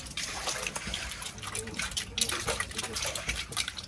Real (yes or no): no